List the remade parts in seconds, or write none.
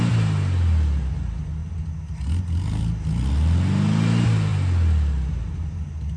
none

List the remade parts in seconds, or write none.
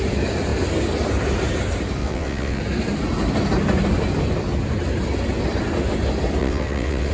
2.0-2.6 (vocoder, WaveNeXt); 6.4-7.1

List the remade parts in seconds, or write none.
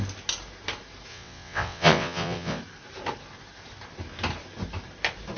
1.1-2.6 (vocoder, WaveNeXt)